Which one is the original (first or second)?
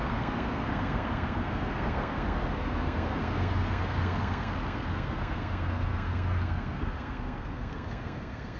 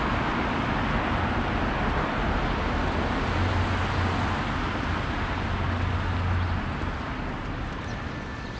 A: second